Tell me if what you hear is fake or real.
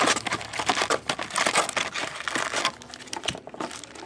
real